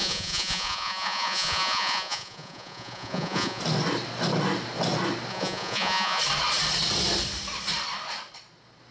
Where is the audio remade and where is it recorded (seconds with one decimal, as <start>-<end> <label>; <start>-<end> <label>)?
0.0-3.6 remade; 3.6-5.3 recorded; 5.3-6.2 remade; 6.2-8.9 recorded